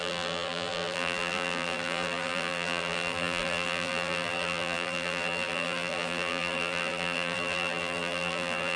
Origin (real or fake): fake